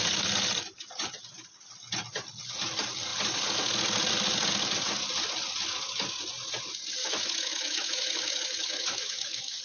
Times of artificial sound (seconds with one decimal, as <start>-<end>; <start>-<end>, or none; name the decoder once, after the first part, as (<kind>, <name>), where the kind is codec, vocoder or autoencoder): 7.0-9.6 (autoencoder, DAC-VAE)